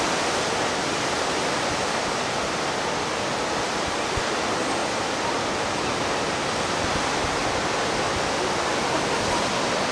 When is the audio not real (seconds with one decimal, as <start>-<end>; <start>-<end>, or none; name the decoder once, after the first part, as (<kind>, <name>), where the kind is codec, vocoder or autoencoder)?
none